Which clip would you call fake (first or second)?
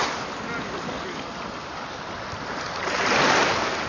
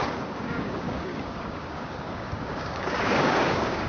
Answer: second